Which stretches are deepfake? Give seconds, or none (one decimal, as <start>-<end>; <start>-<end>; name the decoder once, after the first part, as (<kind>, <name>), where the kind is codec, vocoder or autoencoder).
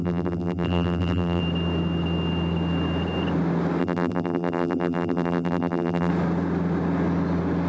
0.0-1.4 (vocoder, BigVGAN v2); 3.8-6.1